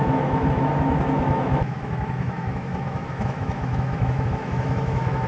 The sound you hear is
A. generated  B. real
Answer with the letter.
A